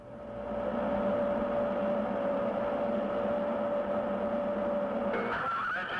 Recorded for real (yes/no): yes